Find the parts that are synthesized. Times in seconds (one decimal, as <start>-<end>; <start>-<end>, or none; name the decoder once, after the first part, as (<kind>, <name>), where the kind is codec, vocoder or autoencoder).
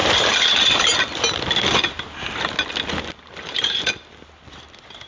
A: none